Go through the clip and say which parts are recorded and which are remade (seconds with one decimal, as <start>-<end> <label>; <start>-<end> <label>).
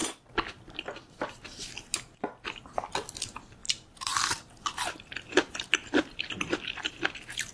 0.0-3.6 recorded; 3.6-7.0 remade; 7.0-7.5 recorded